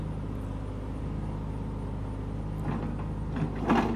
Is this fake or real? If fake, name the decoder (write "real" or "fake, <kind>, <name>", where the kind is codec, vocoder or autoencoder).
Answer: real